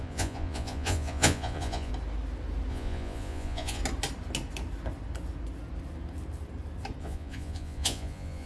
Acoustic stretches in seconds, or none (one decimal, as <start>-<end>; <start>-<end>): 1.9-2.7; 3.8-7.0